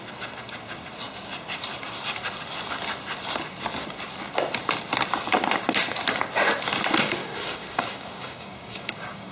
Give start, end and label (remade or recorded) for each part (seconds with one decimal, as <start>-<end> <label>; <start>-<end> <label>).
0.0-7.2 recorded; 7.2-9.3 remade